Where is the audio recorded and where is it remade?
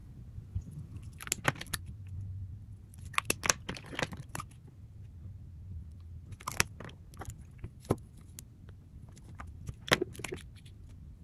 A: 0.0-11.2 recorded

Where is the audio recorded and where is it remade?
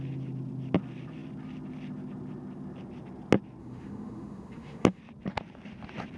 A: 0.0-3.6 recorded; 3.6-5.0 remade; 5.0-6.2 recorded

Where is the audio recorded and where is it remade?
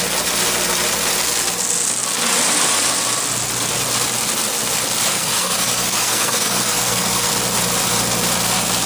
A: 0.0-5.1 recorded; 5.1-7.3 remade; 7.3-8.9 recorded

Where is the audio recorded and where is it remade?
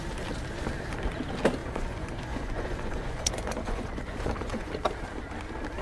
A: 0.0-1.6 recorded; 1.6-4.7 remade; 4.7-5.8 recorded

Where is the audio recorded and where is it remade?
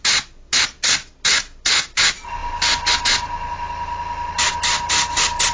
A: 0.0-5.5 recorded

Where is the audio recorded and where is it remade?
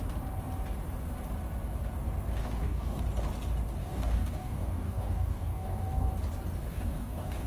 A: 0.0-2.4 recorded; 2.4-3.0 remade; 3.0-3.8 recorded; 3.8-6.1 remade; 6.1-6.7 recorded; 6.7-7.5 remade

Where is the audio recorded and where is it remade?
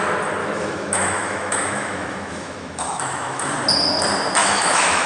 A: 0.0-0.4 recorded; 0.4-3.5 remade; 3.5-4.4 recorded; 4.4-5.1 remade